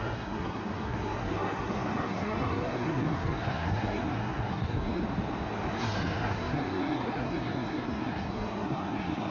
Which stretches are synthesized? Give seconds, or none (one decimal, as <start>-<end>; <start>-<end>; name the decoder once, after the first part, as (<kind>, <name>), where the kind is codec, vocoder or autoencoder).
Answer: 0.0-5.0 (codec, SNAC); 5.7-9.3